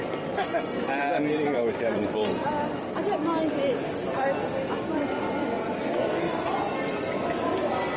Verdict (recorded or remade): recorded